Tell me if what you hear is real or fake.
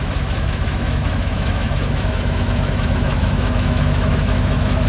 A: fake